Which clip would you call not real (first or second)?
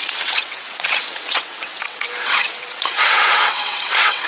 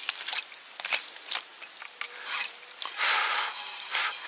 first